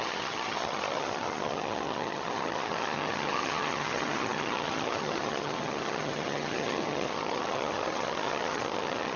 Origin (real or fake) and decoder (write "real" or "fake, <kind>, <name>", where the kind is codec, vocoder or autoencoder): fake, vocoder, HiFi-GAN